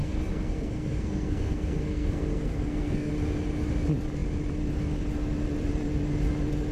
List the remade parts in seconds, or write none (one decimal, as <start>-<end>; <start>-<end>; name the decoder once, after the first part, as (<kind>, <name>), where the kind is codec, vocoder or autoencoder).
0.0-3.1 (codec, SNAC)